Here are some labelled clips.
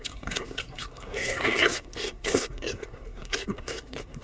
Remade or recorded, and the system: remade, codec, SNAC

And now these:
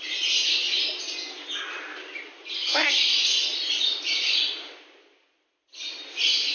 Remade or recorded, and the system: recorded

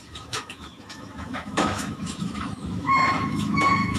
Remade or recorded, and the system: remade, autoencoder, DAC-VAE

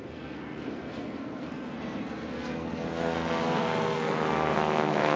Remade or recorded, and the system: remade, codec, SNAC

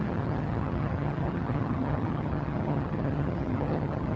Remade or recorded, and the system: remade, vocoder, HiFi-GAN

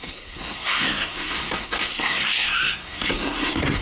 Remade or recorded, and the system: remade, codec, SNAC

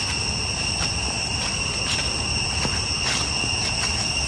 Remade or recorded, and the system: recorded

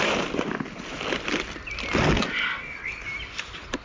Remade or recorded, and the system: recorded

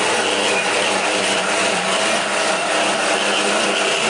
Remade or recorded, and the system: remade, vocoder, BigVGAN v2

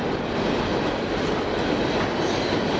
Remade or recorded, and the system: recorded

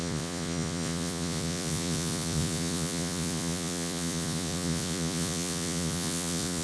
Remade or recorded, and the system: remade, vocoder, Vocos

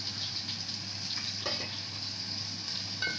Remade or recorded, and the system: recorded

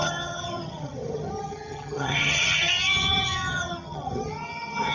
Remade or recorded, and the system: remade, vocoder, HiFi-GAN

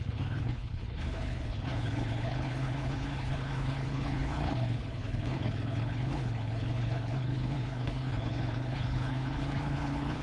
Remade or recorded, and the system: remade, codec, HILCodec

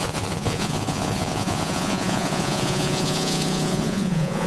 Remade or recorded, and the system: remade, vocoder, Vocos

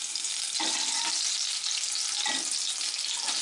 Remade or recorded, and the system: recorded